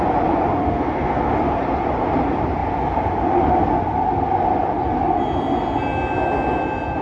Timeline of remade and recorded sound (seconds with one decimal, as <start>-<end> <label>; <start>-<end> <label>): 0.0-0.6 recorded; 0.6-1.3 remade; 1.3-7.0 recorded